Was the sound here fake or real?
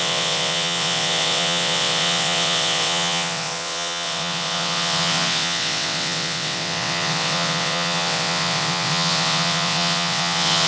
fake